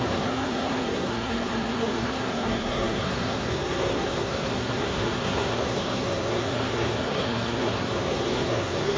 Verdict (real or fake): fake